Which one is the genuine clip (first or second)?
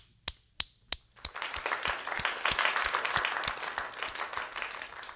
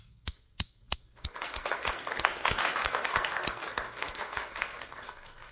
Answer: first